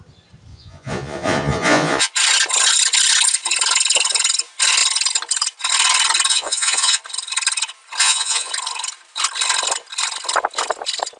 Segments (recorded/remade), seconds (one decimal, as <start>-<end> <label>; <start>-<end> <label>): 0.0-0.5 recorded; 0.5-2.1 remade; 2.1-6.3 recorded; 6.3-7.0 remade; 7.0-8.0 recorded; 8.0-8.5 remade; 8.5-11.2 recorded

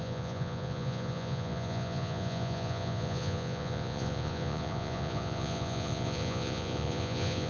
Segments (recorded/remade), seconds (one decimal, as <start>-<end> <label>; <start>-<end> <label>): 0.0-7.5 remade

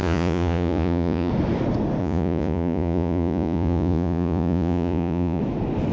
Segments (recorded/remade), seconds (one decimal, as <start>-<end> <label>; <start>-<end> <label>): 0.0-1.3 remade; 1.3-2.0 recorded; 2.0-5.4 remade; 5.4-5.9 recorded

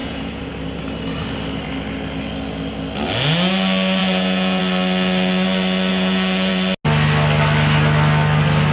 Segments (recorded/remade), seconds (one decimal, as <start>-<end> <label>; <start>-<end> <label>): 0.0-0.5 remade; 0.5-4.0 recorded; 4.0-4.6 remade; 4.6-5.9 recorded; 5.9-6.5 remade; 6.5-8.7 recorded

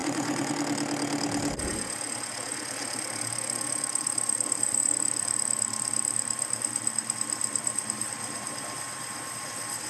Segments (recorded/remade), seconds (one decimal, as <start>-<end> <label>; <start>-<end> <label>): 0.0-0.5 remade; 0.5-9.9 recorded

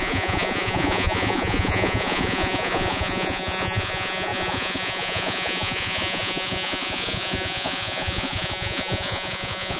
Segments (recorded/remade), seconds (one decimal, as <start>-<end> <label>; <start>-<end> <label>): 0.0-9.8 remade